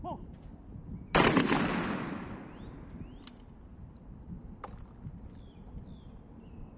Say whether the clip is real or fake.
real